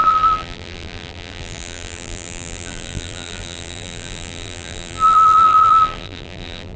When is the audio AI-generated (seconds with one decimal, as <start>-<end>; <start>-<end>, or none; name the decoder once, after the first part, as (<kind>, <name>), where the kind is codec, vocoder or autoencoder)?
0.0-6.8 (vocoder, BigVGAN v2)